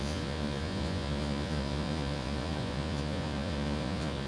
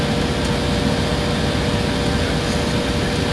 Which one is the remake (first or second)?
first